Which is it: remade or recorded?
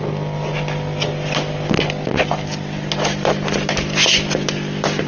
recorded